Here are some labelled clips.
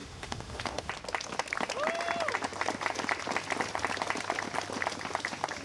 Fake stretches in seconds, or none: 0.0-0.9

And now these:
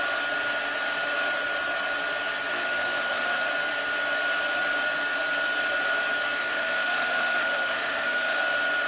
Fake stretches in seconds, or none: 2.5-3.5; 6.4-8.4

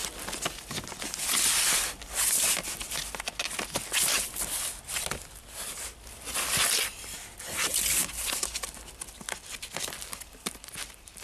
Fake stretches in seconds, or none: none

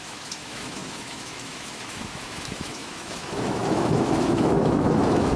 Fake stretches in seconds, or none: 0.0-5.4

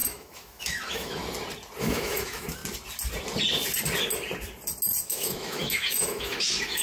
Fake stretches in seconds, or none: 0.0-1.2; 1.8-2.6; 5.0-6.8